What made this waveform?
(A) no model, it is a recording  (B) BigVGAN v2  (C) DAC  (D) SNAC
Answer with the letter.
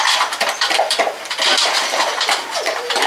B